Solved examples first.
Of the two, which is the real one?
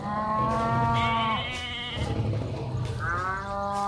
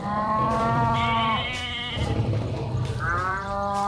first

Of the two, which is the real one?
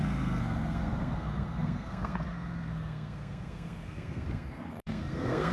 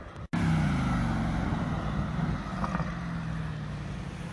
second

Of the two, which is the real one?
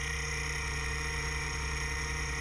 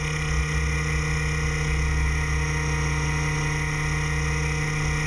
second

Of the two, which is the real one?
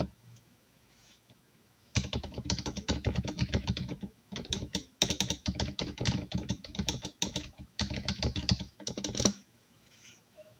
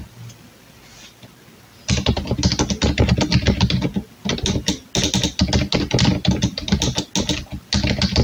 second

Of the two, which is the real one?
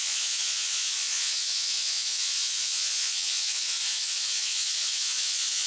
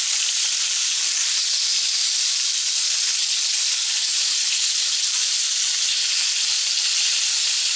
second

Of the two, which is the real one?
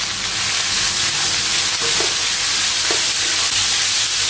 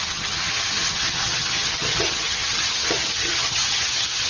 first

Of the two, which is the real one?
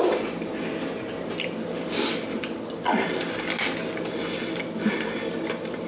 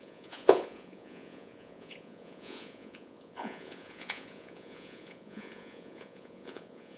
first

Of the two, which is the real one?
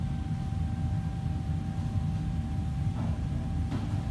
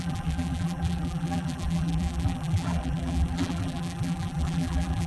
first